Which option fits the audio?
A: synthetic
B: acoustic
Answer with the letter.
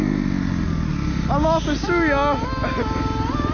B